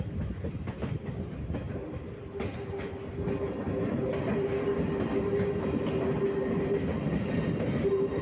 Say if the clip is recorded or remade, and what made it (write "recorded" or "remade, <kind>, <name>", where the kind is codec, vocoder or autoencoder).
recorded